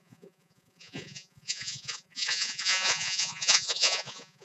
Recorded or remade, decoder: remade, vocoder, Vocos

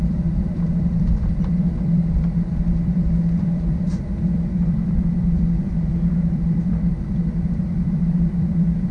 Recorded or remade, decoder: remade, vocoder, BigVGAN v2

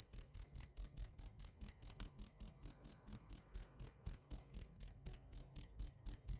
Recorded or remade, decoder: remade, codec, SNAC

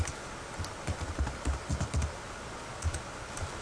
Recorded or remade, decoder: recorded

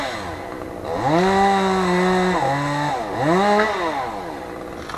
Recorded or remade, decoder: recorded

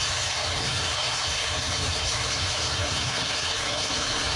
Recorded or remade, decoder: remade, codec, SNAC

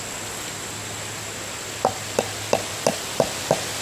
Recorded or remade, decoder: recorded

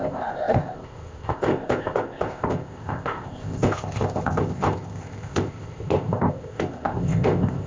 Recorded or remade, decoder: remade, codec, ZipCodec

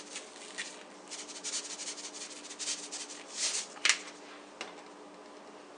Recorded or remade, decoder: recorded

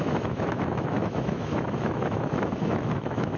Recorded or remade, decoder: remade, autoencoder, DAC-VAE